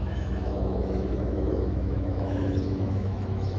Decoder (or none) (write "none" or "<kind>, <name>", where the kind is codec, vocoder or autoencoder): autoencoder, DAC-VAE